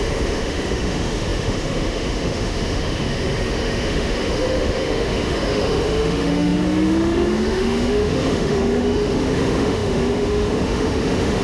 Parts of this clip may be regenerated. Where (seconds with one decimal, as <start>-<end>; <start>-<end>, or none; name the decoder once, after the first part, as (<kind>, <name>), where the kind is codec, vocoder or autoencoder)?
0.0-11.4 (autoencoder, DAC-VAE)